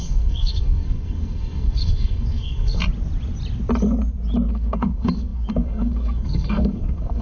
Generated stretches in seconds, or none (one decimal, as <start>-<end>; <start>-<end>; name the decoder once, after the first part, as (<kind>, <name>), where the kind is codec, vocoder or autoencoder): 0.0-2.8 (codec, SNAC); 4.5-7.2